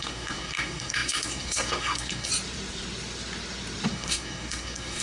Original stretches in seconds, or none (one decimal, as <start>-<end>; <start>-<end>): 2.3-3.9